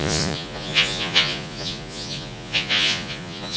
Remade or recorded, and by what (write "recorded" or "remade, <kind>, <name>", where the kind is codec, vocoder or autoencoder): remade, vocoder, Vocos